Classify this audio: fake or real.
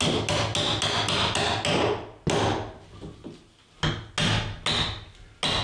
real